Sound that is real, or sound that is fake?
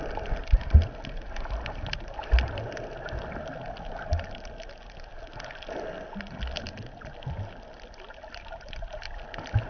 real